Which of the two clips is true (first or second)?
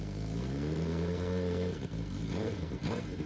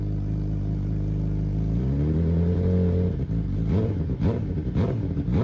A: second